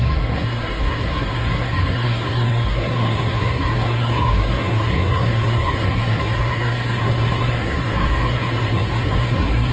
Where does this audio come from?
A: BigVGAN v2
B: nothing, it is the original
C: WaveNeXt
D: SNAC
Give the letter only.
D